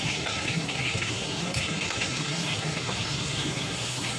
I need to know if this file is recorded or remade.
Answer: remade